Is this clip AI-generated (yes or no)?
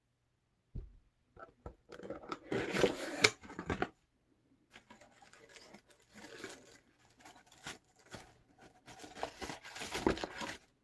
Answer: no